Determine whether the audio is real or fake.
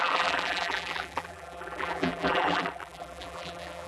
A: fake